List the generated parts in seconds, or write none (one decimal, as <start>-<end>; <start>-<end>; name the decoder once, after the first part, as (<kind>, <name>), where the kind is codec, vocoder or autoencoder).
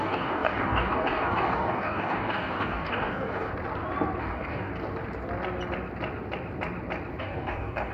0.0-3.5 (codec, DAC); 4.2-4.7; 7.2-7.9